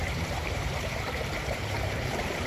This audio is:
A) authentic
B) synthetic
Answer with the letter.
B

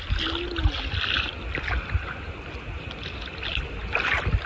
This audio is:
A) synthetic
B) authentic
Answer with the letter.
B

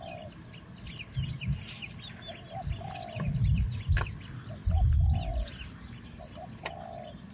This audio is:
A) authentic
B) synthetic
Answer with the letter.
A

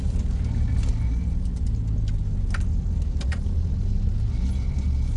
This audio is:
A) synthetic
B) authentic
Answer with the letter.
B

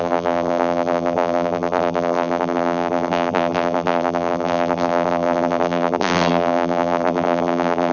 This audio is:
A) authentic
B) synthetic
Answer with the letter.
B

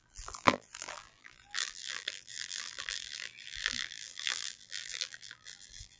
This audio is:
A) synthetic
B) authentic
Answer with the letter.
A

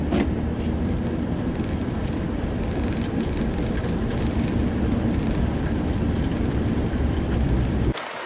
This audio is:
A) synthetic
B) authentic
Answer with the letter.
A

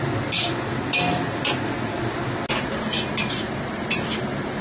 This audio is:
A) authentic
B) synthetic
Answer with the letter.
A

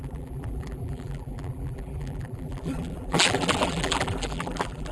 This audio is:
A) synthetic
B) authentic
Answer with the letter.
A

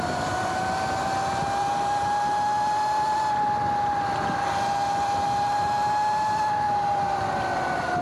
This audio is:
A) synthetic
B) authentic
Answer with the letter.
B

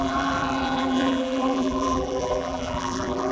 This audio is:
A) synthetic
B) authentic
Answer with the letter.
A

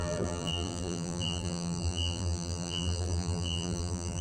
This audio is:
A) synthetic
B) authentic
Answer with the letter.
A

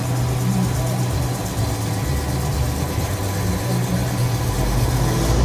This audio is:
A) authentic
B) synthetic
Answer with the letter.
A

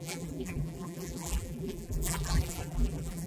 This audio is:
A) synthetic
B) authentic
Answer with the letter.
A